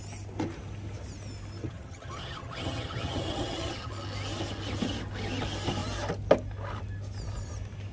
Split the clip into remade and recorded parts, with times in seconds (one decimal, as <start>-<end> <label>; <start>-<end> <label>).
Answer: 0.0-1.6 recorded; 1.6-3.9 remade; 3.9-7.9 recorded